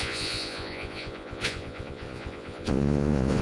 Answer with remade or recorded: remade